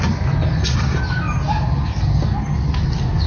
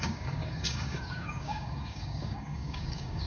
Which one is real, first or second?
first